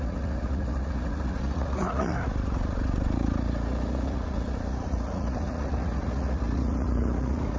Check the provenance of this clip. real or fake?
fake